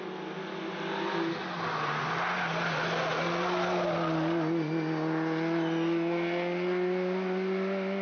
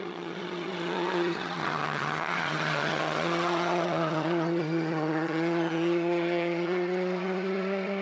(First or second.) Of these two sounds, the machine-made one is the second